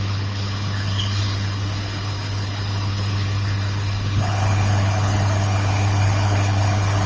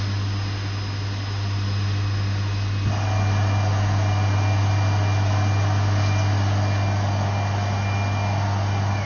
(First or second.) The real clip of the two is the second